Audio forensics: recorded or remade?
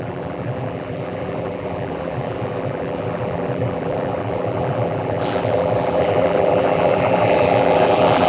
remade